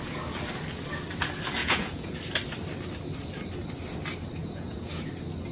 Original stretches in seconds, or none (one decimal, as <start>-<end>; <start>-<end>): 0.0-1.6; 2.2-4.4; 4.9-5.5